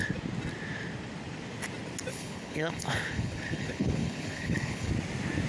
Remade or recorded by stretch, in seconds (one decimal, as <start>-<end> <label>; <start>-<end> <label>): 0.0-2.1 recorded; 2.1-4.9 remade; 4.9-5.5 recorded